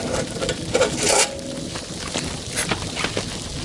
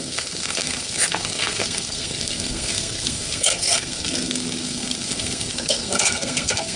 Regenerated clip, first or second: second